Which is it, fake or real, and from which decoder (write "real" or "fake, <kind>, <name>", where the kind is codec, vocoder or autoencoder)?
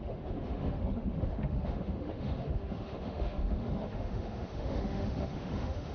fake, autoencoder, DAC-VAE